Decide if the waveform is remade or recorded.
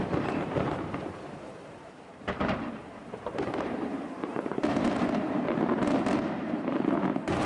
remade